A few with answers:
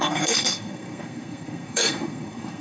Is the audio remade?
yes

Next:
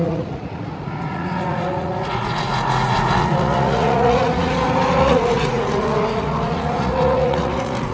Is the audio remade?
yes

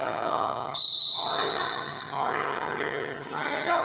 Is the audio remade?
yes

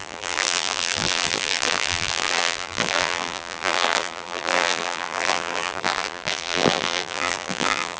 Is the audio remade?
yes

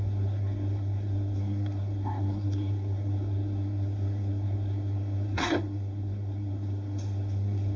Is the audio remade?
yes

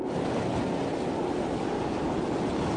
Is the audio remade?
no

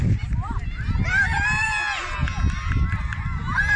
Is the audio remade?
no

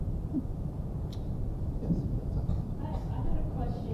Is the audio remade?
yes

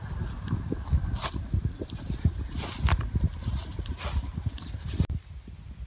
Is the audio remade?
no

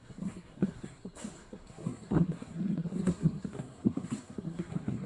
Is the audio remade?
yes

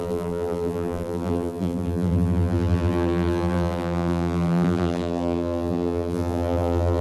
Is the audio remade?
yes